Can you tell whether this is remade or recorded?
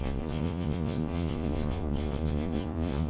remade